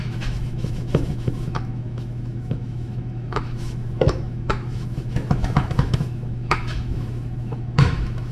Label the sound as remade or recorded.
remade